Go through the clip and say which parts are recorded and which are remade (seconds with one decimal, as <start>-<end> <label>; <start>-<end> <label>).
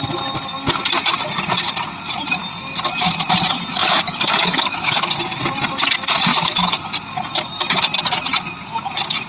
0.0-3.8 recorded; 3.8-5.1 remade; 5.1-6.3 recorded; 6.3-6.8 remade; 6.8-9.3 recorded